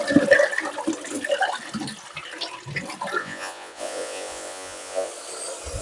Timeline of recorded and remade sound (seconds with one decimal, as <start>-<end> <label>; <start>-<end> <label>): 0.0-3.2 recorded; 3.2-5.1 remade; 5.1-5.8 recorded